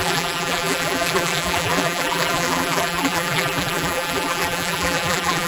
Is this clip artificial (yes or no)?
yes